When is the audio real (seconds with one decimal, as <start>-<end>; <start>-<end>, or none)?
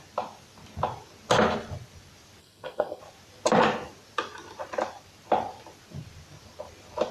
0.0-2.4; 3.0-7.1